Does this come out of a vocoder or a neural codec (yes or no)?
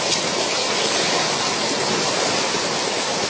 no